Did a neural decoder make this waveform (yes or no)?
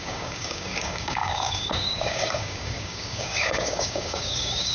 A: yes